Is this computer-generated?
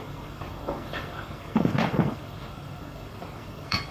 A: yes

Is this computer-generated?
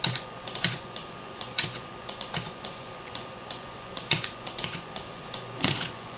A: yes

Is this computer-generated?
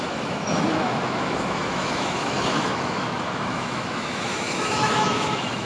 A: yes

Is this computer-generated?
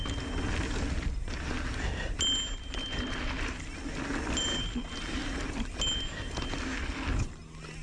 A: no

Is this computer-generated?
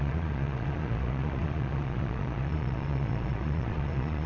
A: yes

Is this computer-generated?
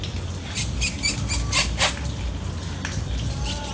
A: no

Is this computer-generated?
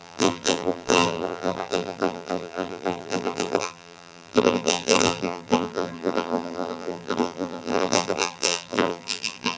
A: yes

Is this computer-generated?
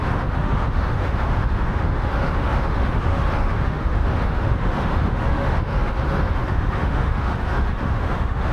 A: yes